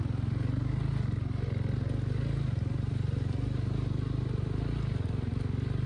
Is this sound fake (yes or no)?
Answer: no